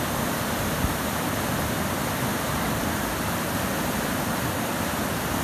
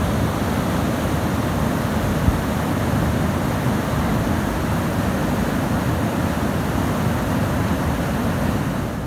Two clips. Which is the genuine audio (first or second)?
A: second